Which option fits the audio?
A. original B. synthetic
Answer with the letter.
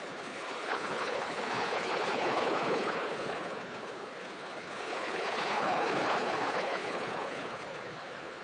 B